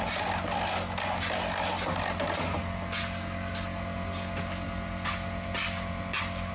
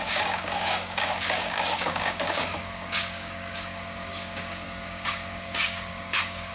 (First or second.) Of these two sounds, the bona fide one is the first